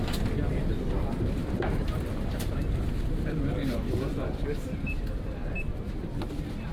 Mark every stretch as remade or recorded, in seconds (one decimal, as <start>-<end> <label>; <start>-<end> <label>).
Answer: 0.0-1.4 recorded; 1.4-4.0 remade; 4.0-6.7 recorded

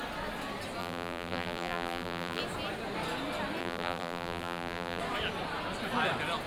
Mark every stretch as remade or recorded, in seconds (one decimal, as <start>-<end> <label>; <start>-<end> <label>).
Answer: 0.0-0.8 recorded; 0.8-2.4 remade; 2.4-3.6 recorded; 3.6-5.0 remade; 5.0-6.5 recorded